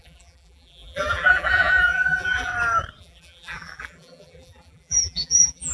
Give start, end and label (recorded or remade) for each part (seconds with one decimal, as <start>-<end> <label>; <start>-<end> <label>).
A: 0.0-2.5 remade; 2.5-3.0 recorded; 3.0-5.7 remade

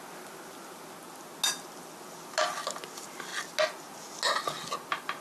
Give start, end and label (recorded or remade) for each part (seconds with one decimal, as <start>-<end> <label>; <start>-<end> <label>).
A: 0.0-5.2 recorded

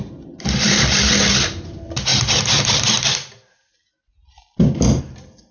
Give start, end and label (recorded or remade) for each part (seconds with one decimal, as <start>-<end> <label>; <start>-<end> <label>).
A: 0.0-5.5 recorded

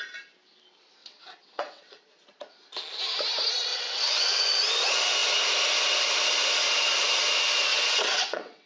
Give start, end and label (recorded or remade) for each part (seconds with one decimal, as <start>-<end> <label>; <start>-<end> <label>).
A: 0.0-1.0 recorded; 1.0-2.0 remade; 2.0-3.7 recorded; 3.7-4.4 remade; 4.4-7.7 recorded; 7.7-8.7 remade